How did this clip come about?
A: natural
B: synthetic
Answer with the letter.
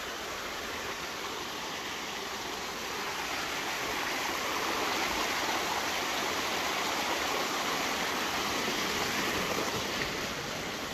A